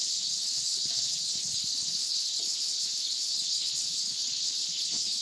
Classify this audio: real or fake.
fake